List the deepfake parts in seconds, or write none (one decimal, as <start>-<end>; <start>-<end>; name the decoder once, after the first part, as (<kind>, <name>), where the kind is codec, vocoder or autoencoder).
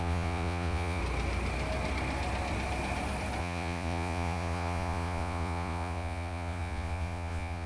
0.0-1.0 (vocoder, Vocos); 3.4-7.7